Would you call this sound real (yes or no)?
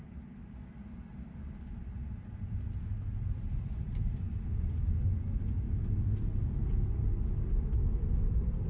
yes